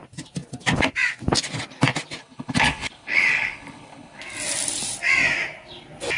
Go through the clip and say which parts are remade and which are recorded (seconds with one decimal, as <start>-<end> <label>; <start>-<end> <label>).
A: 0.0-2.2 recorded; 2.2-4.2 remade; 4.2-6.2 recorded